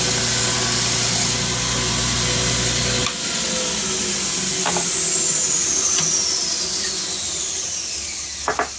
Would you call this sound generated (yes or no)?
no